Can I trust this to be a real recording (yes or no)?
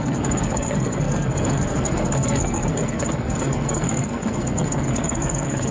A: no